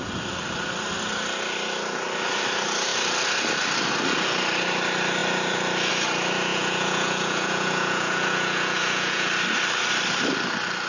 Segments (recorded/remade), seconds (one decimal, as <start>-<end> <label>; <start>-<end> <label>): 0.0-6.5 recorded; 6.5-9.3 remade; 9.3-10.9 recorded